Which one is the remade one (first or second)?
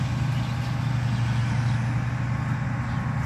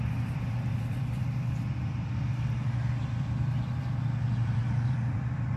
second